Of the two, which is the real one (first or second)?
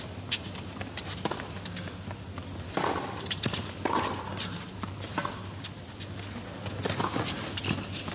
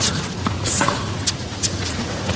first